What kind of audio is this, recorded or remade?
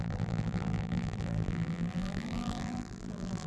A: remade